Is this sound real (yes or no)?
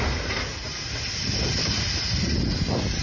yes